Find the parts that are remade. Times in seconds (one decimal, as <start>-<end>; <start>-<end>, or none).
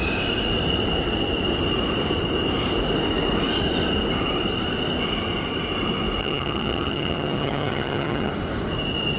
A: 6.2-8.3